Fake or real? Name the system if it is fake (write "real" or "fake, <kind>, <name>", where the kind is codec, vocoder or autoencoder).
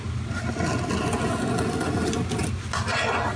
real